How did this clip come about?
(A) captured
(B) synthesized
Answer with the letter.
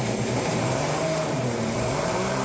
B